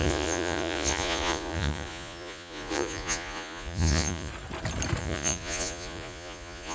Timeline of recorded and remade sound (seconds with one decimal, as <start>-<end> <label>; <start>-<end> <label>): 0.0-4.3 remade; 4.3-5.0 recorded; 5.0-6.7 remade